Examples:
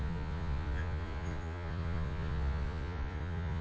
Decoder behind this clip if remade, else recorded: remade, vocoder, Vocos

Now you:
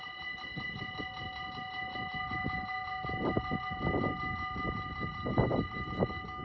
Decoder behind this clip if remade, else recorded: recorded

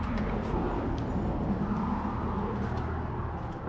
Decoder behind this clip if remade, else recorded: recorded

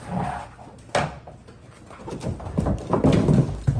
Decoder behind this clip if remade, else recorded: recorded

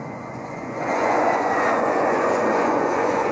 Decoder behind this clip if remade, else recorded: remade, vocoder, Vocos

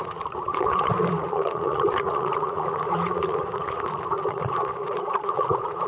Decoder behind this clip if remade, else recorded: remade, vocoder, Vocos